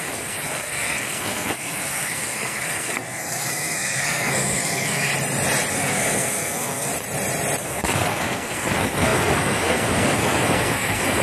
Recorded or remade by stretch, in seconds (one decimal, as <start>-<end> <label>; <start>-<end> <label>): 0.0-5.1 remade; 5.1-5.7 recorded; 5.7-6.9 remade; 6.9-7.6 recorded; 7.6-11.2 remade